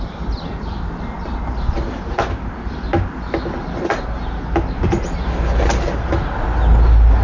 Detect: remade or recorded recorded